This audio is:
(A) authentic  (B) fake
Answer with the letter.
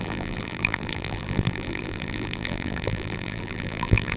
B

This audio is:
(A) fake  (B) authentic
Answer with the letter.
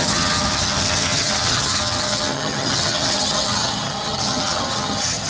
A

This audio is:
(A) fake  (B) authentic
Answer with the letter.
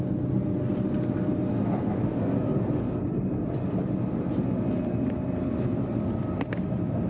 B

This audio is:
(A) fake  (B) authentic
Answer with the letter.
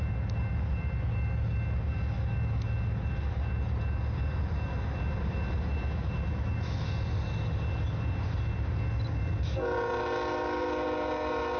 B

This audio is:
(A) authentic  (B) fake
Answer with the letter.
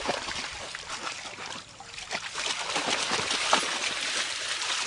B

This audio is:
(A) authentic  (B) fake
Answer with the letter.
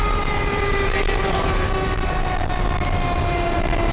B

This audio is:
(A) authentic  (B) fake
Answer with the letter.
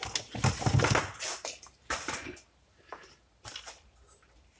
A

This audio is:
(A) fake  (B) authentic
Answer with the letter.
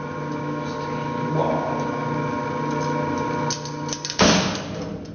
B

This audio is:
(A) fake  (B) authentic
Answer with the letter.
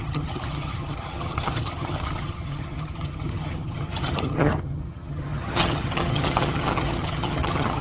A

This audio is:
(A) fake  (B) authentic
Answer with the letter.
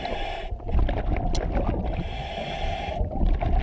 B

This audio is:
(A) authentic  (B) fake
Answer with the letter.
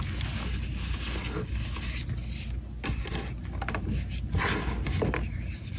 A